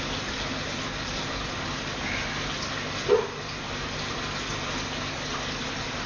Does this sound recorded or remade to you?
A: recorded